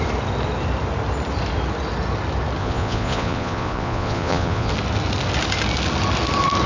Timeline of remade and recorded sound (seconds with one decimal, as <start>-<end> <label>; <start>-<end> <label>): 0.0-2.6 recorded; 2.6-4.7 remade; 4.7-6.7 recorded